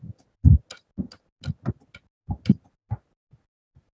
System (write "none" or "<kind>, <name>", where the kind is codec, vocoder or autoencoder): none